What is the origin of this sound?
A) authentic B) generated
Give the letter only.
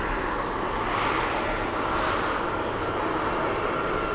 A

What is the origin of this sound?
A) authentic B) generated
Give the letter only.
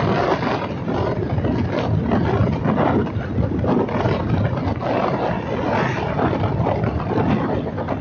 A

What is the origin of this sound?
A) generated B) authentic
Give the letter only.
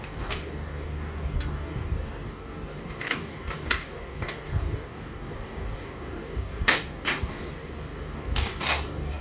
A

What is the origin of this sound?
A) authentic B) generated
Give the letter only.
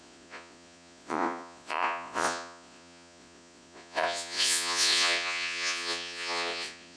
B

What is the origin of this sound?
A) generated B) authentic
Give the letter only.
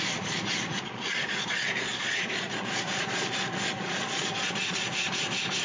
A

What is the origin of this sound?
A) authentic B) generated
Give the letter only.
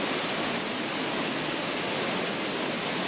A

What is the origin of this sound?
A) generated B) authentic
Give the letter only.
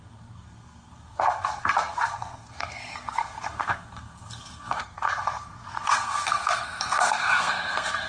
A